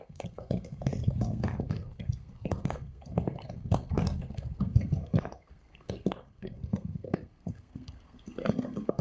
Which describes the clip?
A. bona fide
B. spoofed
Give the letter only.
B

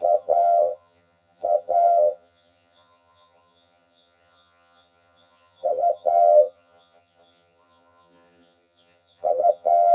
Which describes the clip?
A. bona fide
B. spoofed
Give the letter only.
B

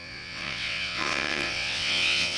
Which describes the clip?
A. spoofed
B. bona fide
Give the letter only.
A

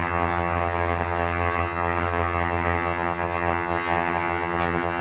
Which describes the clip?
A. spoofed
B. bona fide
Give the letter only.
A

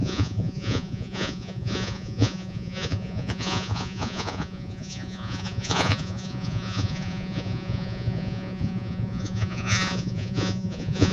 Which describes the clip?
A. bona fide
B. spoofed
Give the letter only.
B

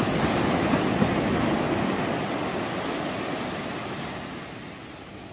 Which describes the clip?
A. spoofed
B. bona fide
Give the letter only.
B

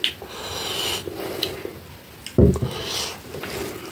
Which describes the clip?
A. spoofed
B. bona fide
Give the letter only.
B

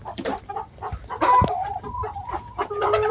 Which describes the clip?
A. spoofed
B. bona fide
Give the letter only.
A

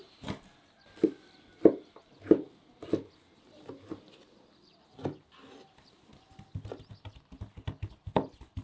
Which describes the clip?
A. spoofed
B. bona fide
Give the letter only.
B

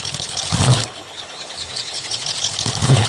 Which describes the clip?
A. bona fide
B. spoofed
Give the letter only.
B